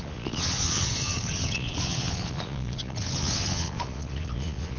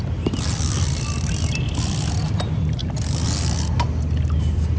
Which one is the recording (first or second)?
second